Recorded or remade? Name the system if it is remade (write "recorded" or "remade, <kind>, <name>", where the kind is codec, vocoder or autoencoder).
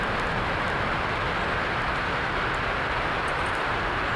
recorded